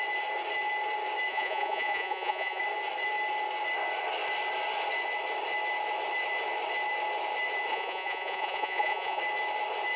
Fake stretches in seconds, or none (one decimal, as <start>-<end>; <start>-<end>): 1.3-2.6; 7.7-9.2